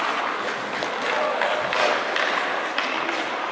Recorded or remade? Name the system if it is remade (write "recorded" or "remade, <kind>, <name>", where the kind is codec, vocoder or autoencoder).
recorded